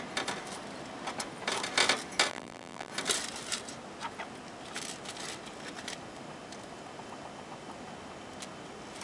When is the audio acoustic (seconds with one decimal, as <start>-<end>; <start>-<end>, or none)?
0.0-2.3; 2.9-9.0